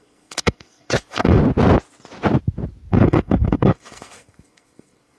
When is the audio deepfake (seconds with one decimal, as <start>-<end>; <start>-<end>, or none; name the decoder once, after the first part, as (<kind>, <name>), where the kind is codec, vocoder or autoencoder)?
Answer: 0.0-1.4 (codec, SNAC); 2.9-5.2